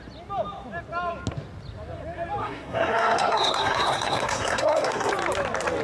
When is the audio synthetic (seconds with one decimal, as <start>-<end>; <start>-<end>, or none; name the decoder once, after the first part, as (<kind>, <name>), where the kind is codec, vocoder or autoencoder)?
2.4-5.1 (codec, SNAC)